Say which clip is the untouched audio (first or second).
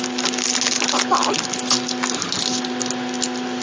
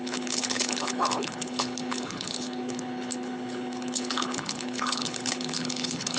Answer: first